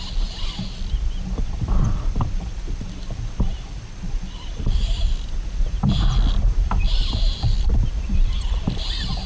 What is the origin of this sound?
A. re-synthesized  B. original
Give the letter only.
A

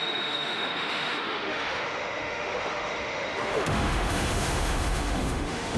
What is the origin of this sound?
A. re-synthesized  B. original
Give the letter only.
A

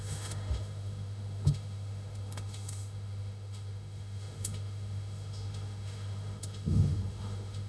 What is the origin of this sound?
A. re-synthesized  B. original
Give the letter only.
A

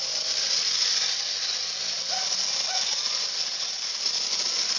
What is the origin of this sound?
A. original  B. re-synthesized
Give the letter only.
A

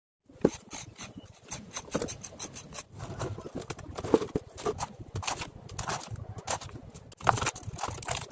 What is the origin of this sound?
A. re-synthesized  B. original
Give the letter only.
B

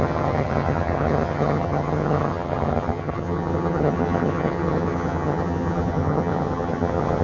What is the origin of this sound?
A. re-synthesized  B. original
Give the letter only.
A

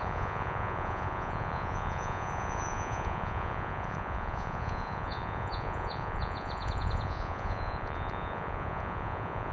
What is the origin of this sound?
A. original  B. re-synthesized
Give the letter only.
B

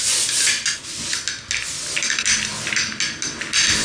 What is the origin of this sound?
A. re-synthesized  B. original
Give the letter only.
B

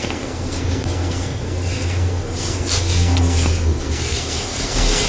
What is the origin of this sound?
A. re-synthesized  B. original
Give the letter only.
A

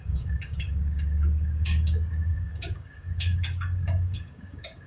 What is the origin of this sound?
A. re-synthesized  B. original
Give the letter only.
A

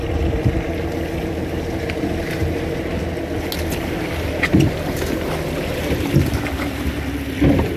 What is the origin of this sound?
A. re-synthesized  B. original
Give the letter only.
B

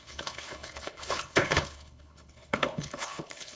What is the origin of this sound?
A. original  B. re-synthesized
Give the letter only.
B